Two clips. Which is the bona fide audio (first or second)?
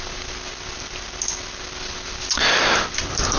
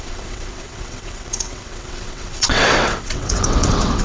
first